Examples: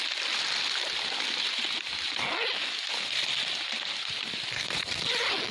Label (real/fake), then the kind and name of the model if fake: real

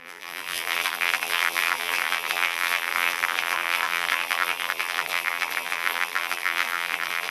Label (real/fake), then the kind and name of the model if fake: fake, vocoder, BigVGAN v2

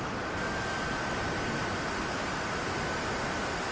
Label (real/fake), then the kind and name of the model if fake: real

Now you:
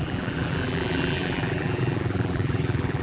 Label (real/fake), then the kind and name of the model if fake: fake, vocoder, BigVGAN v2